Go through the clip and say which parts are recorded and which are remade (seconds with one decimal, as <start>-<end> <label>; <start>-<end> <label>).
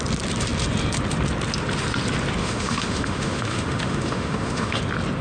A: 0.0-2.4 recorded; 2.4-4.8 remade; 4.8-5.2 recorded